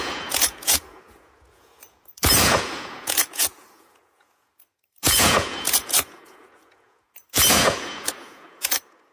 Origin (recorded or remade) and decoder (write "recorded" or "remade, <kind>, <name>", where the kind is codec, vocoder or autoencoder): remade, vocoder, Vocos